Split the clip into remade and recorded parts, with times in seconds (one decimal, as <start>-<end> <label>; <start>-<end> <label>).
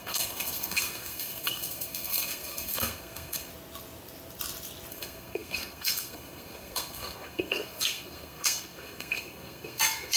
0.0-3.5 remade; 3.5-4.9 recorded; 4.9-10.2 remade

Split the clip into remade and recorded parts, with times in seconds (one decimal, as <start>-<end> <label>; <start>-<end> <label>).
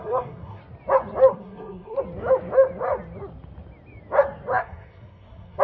0.0-0.6 remade; 0.6-1.3 recorded; 1.3-2.0 remade; 2.0-4.5 recorded; 4.5-5.6 remade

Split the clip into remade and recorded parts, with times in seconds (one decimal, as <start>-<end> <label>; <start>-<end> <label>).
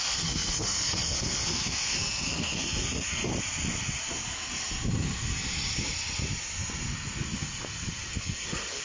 0.0-3.3 remade; 3.3-8.2 recorded; 8.2-8.8 remade